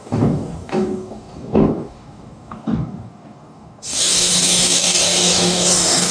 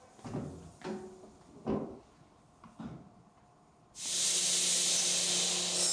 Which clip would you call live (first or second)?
second